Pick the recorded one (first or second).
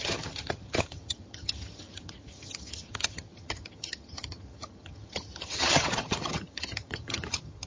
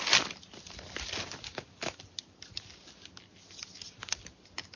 second